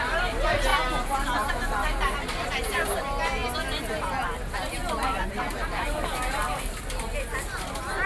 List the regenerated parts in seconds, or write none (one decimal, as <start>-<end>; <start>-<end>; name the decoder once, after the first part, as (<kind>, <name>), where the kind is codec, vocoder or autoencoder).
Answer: none